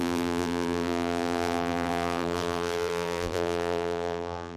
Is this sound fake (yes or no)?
yes